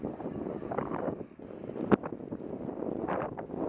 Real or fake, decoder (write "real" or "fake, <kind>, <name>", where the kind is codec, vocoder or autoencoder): real